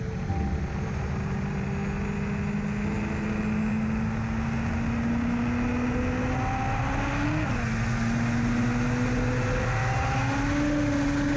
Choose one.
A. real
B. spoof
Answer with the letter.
A